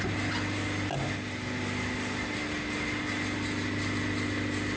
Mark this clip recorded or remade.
recorded